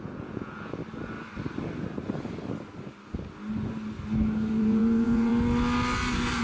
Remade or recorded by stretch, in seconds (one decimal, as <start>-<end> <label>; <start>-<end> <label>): 0.0-0.8 remade; 0.8-4.6 recorded; 4.6-5.3 remade; 5.3-6.4 recorded